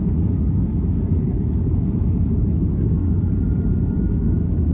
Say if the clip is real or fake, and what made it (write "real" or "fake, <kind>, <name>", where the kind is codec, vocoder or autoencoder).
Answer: fake, codec, DAC